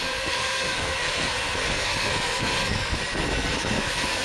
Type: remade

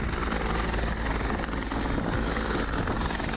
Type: recorded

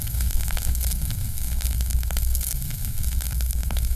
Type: remade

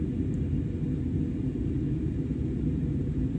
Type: recorded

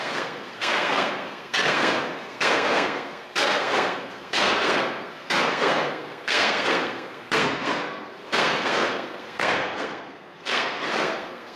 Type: remade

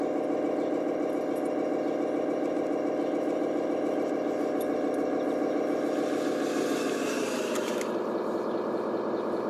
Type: recorded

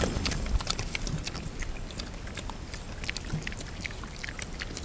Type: recorded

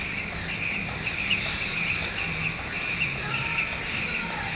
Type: recorded